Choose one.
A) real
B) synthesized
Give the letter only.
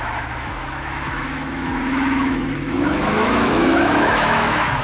B